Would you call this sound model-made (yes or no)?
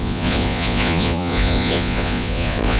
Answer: yes